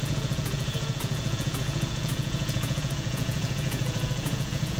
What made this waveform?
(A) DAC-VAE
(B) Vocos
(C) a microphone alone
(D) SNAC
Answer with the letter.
B